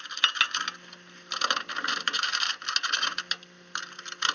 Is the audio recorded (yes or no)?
yes